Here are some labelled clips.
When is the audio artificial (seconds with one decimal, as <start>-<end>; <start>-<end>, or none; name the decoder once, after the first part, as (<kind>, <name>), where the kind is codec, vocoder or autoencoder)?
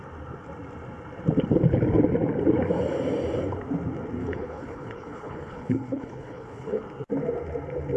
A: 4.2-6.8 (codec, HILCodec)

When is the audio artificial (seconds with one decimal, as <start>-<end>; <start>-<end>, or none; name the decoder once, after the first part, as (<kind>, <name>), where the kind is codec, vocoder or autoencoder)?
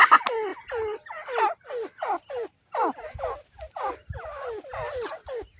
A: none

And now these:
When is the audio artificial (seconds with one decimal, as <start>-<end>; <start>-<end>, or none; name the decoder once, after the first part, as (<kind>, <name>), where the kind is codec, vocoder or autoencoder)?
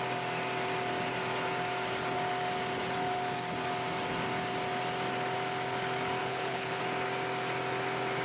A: 6.2-6.8 (codec, HILCodec)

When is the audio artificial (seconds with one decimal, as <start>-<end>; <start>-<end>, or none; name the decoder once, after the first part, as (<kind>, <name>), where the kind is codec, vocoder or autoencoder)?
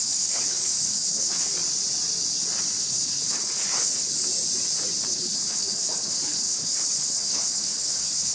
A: 0.0-1.5 (codec, HILCodec); 2.8-4.2; 5.1-8.3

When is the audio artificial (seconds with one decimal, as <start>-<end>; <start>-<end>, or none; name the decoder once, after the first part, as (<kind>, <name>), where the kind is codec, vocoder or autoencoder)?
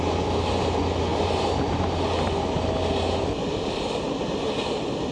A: none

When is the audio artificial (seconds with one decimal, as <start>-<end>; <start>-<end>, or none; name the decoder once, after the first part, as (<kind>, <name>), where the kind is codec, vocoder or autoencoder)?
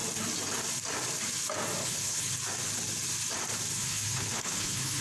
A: 1.8-2.3 (codec, HILCodec); 3.7-5.0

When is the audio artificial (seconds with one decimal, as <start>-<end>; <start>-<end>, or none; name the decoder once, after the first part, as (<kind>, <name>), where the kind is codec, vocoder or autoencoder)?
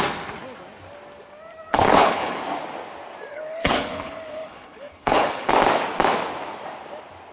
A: 1.7-2.4 (codec, HILCodec); 3.3-5.5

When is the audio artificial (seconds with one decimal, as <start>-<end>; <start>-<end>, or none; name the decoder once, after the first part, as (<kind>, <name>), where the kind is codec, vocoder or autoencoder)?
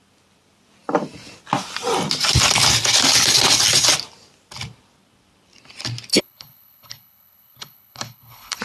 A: 6.1-8.6 (codec, HILCodec)